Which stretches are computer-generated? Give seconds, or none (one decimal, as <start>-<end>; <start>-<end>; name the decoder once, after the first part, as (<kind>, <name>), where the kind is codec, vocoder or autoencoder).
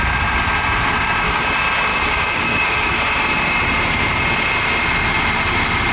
1.9-2.9 (codec, DAC)